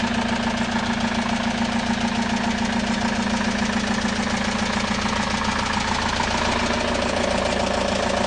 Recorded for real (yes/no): yes